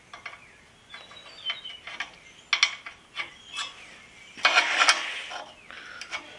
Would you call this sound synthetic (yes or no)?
no